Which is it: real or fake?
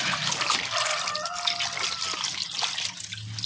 real